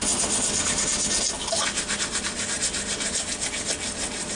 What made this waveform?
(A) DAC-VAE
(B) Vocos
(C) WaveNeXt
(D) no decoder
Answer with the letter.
D